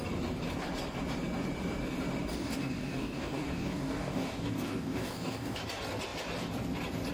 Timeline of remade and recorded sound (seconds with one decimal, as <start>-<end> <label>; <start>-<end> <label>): 0.0-2.3 recorded; 2.3-5.6 remade; 5.6-7.1 recorded